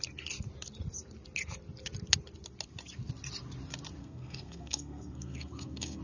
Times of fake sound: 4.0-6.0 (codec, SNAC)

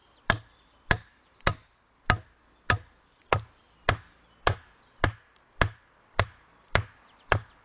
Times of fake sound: none

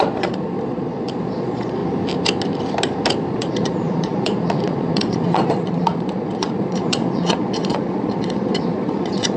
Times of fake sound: 0.0-1.8 (vocoder, Vocos); 3.3-9.4

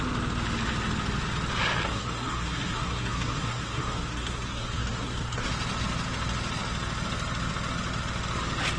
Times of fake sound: 1.9-5.5 (codec, SNAC)

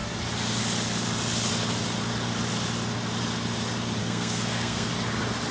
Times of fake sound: 4.0-4.9 (codec, SNAC)

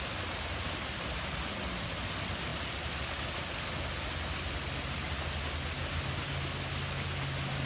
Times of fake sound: none

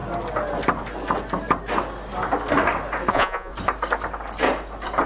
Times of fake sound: 3.1-3.5 (vocoder, Vocos)